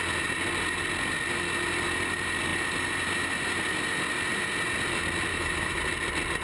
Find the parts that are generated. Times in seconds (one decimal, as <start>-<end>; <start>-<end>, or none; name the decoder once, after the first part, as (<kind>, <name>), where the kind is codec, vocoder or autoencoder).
5.3-5.8 (autoencoder, DAC-VAE)